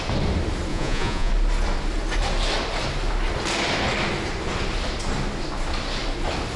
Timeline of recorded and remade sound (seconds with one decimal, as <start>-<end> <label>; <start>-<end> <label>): 0.0-0.7 recorded; 0.7-1.3 remade; 1.3-6.6 recorded